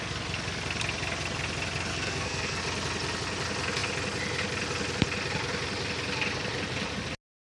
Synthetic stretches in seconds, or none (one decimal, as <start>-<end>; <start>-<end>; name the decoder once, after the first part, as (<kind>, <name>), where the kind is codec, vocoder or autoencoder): 1.9-2.6 (codec, SNAC)